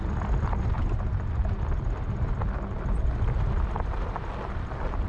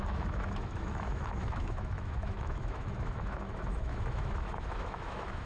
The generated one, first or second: second